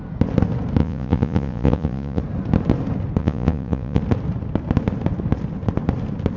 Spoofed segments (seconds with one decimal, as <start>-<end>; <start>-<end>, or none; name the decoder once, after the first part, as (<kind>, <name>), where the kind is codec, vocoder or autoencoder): 0.8-2.2 (vocoder, Vocos); 3.2-4.0